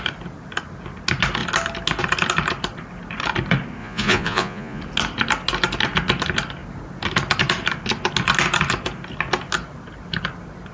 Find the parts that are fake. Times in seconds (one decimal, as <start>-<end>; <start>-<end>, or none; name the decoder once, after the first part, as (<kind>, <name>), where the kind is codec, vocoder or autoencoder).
3.8-4.8 (vocoder, Vocos)